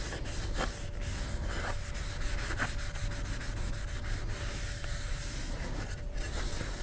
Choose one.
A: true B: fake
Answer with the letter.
A